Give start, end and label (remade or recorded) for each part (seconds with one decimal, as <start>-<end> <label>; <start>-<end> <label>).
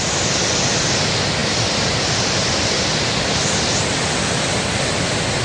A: 0.0-5.4 recorded